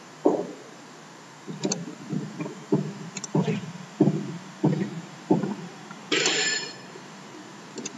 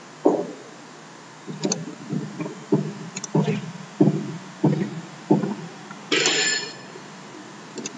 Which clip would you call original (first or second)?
second